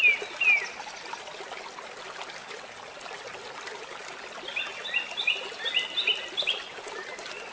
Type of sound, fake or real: real